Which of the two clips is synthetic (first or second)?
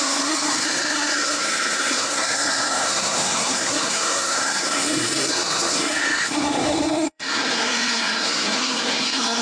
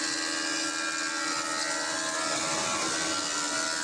first